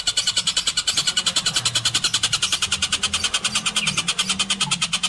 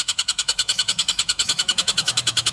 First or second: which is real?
first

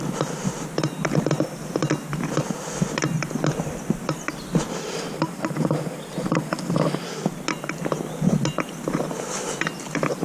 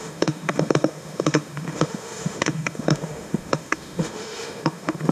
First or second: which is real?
first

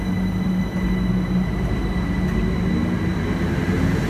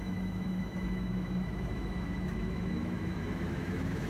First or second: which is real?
first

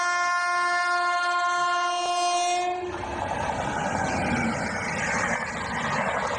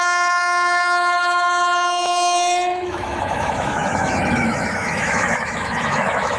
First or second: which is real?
first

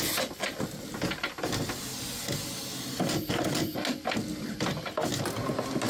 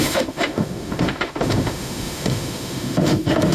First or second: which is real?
first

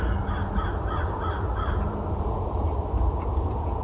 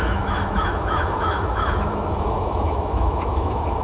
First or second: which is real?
first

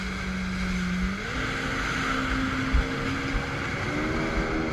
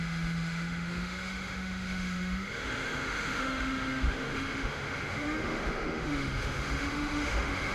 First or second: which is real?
first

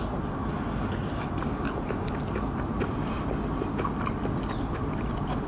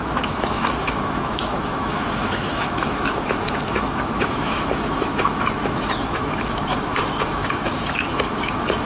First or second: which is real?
first